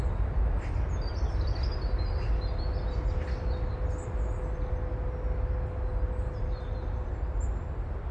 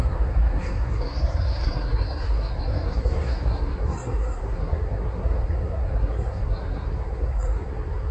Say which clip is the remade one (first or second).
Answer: second